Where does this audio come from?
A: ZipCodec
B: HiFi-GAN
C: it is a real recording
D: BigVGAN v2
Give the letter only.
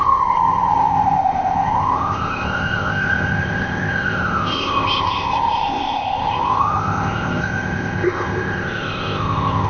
A